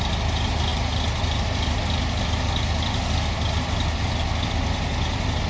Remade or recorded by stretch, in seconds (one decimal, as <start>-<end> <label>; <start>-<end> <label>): 0.0-5.5 recorded